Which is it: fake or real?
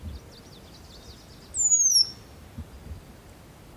real